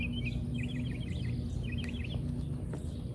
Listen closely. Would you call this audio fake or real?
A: real